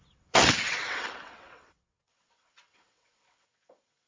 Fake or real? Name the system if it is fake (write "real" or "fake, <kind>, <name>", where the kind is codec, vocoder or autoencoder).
fake, vocoder, WaveNeXt